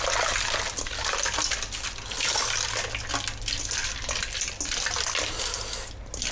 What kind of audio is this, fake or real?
real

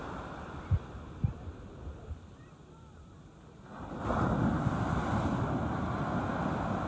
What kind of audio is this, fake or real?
real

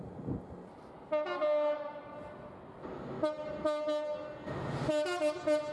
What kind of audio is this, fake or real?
real